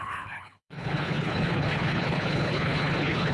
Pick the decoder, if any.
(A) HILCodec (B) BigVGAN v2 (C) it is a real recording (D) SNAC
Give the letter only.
A